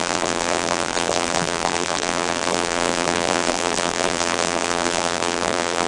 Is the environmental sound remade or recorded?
remade